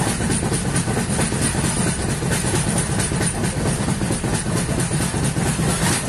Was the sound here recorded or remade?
recorded